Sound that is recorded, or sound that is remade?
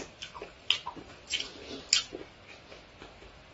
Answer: recorded